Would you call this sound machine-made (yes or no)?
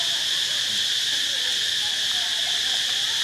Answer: no